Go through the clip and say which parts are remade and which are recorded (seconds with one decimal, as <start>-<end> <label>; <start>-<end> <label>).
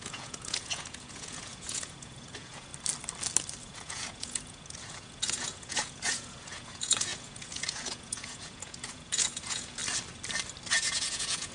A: 0.0-2.7 remade; 2.7-3.6 recorded; 3.6-9.8 remade; 9.8-10.7 recorded; 10.7-11.5 remade